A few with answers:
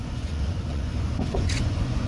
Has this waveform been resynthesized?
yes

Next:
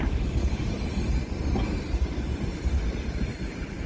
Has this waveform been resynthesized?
no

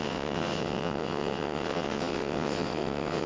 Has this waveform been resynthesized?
yes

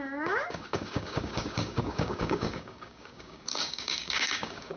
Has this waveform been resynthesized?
yes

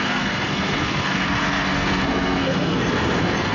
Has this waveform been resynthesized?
yes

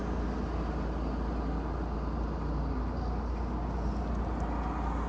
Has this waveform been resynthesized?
no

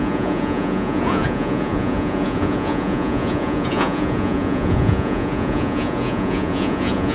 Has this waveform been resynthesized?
yes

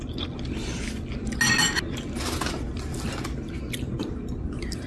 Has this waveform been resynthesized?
no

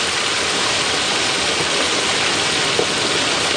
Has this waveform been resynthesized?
no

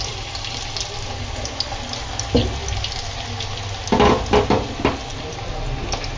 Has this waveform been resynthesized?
no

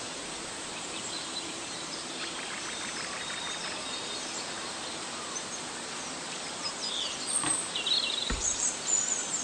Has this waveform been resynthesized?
yes